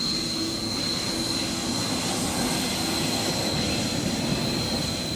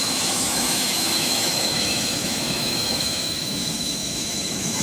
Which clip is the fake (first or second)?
second